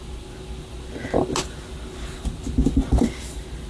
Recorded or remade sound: recorded